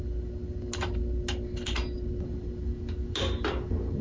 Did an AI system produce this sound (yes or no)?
no